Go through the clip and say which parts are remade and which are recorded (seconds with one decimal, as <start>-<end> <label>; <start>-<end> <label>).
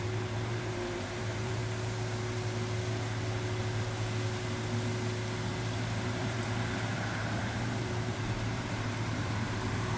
0.0-1.6 remade; 1.6-5.5 recorded; 5.5-10.0 remade